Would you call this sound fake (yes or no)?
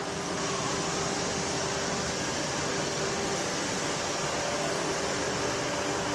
no